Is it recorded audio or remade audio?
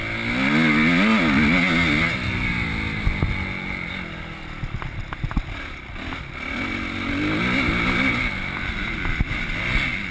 recorded